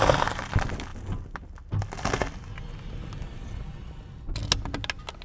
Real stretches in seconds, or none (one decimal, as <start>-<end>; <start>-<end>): 0.0-5.2